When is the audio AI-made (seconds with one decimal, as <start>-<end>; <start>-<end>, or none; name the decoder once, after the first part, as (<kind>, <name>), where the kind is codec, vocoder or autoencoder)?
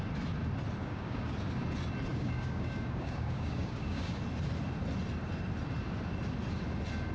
0.8-1.3 (codec, DAC); 2.1-4.2